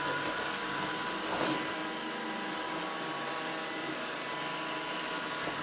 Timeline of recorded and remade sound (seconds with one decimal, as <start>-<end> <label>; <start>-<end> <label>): 0.0-5.6 recorded